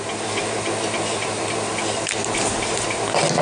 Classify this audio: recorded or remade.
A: recorded